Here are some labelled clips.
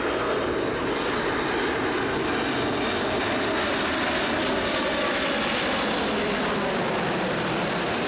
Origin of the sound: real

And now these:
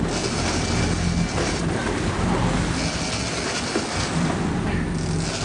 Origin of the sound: real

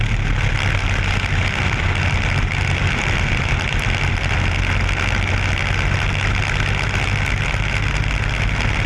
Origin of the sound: real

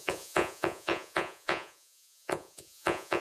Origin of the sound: fake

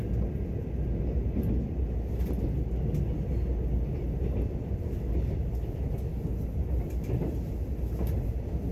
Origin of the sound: real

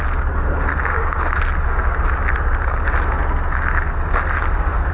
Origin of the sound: real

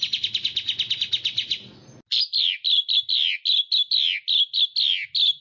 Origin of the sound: real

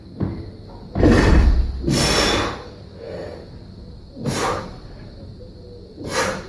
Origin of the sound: real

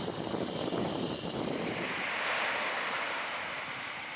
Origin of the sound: fake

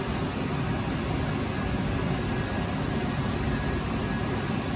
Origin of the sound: real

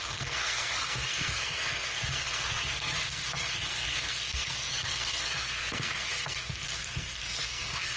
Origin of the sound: fake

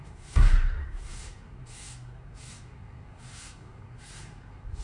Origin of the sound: fake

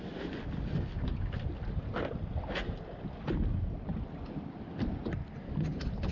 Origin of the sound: real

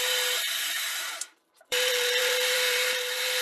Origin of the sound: fake